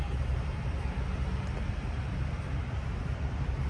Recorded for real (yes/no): no